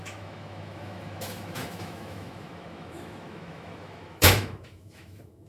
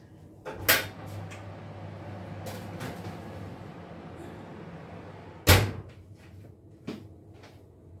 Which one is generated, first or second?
first